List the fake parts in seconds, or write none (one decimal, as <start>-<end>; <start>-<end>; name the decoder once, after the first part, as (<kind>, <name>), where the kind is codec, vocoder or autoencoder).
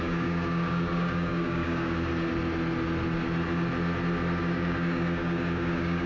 0.0-2.1 (codec, DAC); 4.4-6.1